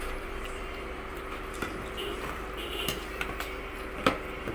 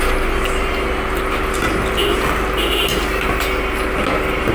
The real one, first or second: second